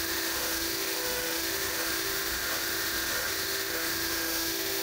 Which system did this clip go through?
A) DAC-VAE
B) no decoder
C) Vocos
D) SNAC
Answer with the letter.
A